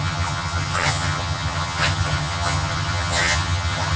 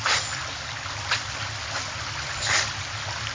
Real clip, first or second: second